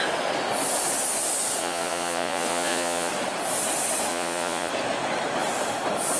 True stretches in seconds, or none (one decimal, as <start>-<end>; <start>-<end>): 0.0-1.6; 3.1-4.1; 4.7-6.2